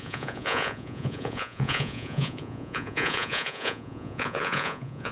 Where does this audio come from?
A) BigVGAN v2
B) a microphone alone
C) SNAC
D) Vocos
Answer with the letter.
D